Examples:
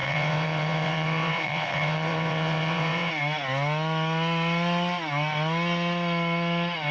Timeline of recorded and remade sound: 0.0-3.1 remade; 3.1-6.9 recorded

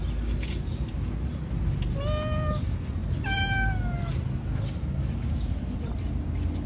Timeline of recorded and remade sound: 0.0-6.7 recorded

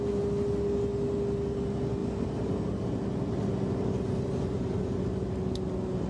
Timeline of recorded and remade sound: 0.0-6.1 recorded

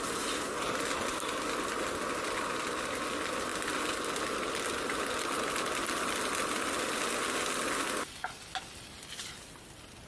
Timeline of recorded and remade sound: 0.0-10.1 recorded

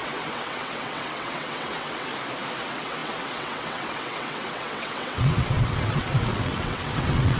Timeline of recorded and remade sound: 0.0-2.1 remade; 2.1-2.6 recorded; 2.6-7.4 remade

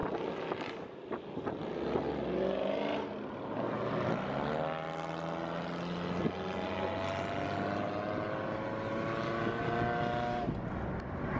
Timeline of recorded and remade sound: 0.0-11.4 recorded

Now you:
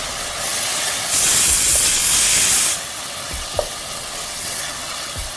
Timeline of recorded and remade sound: 0.0-2.0 remade; 2.0-2.7 recorded; 2.7-5.4 remade